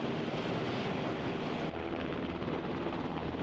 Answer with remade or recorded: recorded